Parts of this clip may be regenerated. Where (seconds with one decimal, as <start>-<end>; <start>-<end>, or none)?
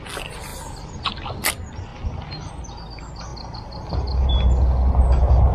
none